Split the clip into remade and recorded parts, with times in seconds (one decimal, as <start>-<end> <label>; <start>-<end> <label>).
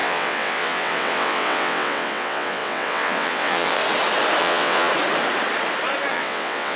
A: 0.0-3.8 remade; 3.8-4.4 recorded; 4.4-4.9 remade; 4.9-6.1 recorded; 6.1-6.8 remade